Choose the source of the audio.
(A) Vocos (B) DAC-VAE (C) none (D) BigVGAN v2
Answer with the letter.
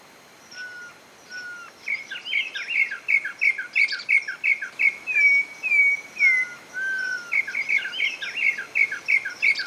C